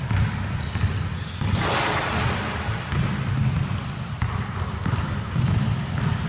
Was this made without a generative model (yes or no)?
yes